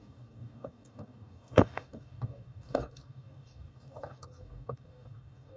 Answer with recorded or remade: remade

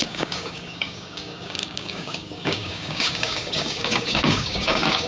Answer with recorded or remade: remade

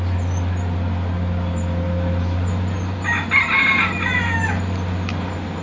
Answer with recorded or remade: recorded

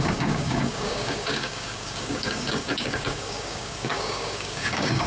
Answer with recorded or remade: remade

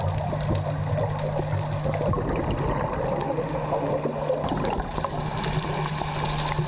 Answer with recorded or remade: recorded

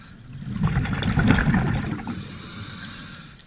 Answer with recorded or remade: recorded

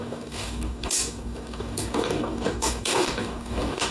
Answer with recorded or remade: remade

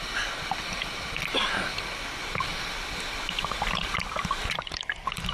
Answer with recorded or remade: recorded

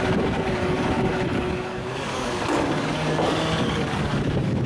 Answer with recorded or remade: remade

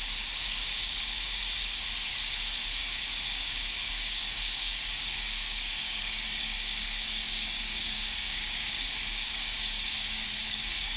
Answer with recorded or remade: remade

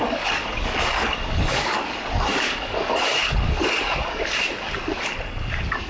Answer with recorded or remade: remade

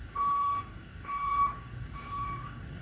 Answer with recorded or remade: remade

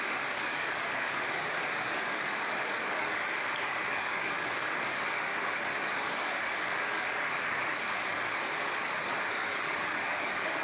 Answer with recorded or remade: remade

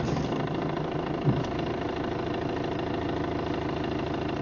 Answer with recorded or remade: recorded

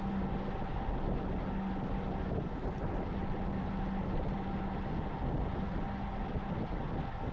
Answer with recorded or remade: recorded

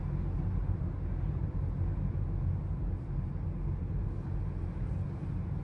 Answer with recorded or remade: recorded